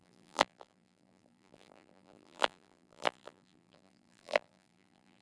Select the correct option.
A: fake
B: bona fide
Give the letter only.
A